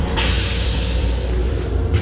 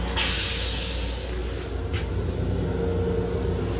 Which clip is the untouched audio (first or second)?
second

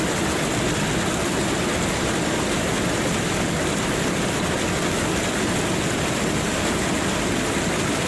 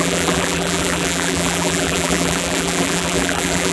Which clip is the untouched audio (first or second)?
first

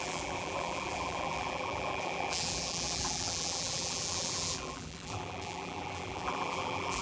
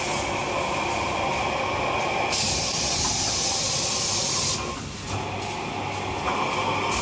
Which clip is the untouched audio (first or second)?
second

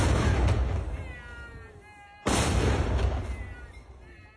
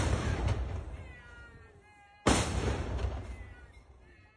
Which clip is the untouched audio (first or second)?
first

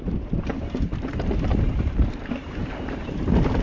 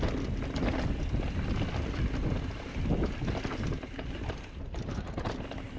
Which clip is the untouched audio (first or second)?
second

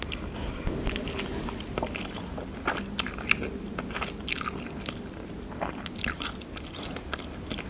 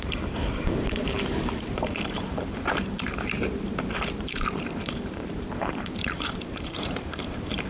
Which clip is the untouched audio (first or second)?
first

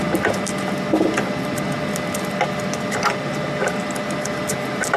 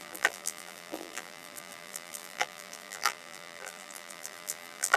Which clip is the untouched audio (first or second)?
first